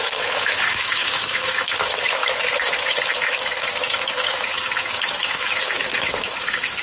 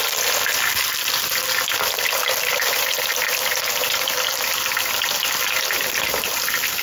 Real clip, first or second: second